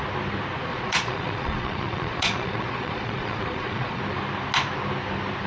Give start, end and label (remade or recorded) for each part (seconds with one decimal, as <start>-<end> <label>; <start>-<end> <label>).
0.0-0.7 recorded; 0.7-4.0 remade; 4.0-5.5 recorded